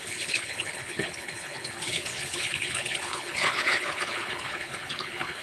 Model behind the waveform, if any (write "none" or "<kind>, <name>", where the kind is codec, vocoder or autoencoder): codec, HILCodec